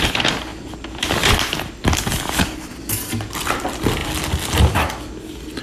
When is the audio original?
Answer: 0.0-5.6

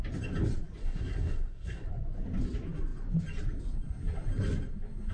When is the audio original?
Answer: 0.0-0.8; 1.9-5.1

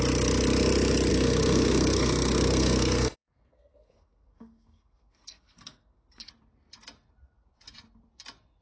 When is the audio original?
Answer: 0.0-1.1; 6.3-8.6

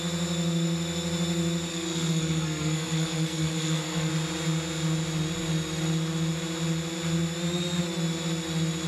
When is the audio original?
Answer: 0.0-1.7; 4.1-8.9

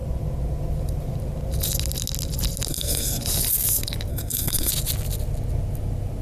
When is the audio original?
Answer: 0.0-2.7; 3.2-4.1; 4.7-6.2

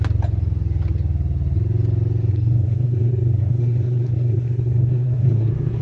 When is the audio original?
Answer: 0.0-2.3

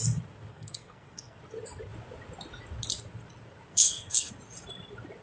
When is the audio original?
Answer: 0.0-0.5; 1.4-3.7; 4.3-5.2

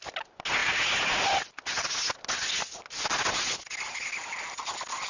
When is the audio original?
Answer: 0.0-5.1